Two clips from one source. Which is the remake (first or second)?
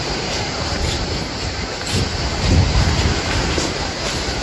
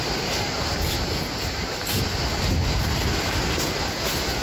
first